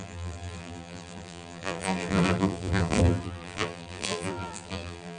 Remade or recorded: remade